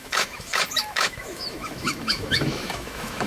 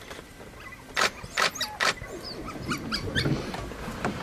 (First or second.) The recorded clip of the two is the second